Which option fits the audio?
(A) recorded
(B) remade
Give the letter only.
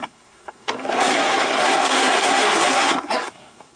B